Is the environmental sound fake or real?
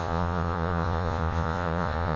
fake